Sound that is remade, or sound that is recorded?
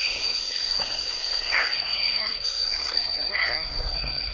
remade